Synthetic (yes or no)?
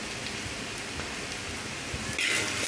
no